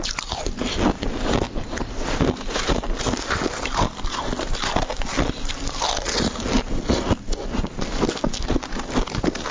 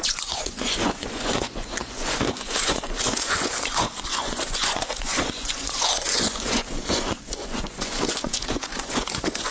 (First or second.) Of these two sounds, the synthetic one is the second